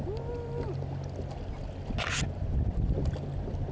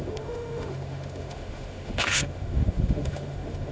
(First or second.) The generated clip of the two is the second